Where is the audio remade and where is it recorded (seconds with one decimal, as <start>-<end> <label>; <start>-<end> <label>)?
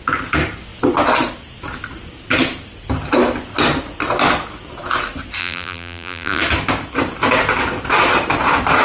0.0-5.4 recorded; 5.4-6.4 remade; 6.4-8.8 recorded